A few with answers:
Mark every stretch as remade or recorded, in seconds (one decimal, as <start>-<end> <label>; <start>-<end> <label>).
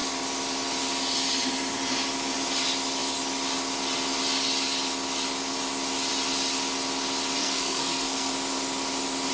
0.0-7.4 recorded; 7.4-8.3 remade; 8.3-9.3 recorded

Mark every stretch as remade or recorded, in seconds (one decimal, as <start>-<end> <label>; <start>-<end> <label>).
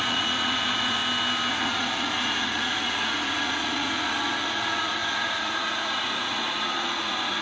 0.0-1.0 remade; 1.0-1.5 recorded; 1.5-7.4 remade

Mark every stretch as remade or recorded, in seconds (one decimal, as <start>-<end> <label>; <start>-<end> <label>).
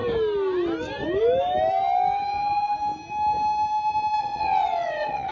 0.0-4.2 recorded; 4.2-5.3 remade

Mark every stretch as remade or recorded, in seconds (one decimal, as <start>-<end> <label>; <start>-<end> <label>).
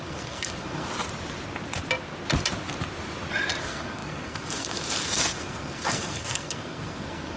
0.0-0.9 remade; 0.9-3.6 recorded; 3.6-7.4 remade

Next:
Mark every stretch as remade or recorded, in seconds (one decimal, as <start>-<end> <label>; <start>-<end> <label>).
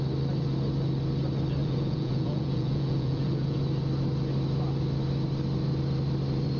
0.0-1.6 recorded; 1.6-3.6 remade; 3.6-6.6 recorded